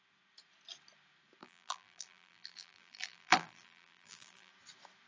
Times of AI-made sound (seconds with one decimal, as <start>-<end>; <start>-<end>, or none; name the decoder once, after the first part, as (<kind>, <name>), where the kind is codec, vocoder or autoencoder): 1.4-4.5 (vocoder, BigVGAN v2)